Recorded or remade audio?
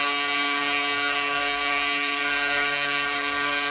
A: remade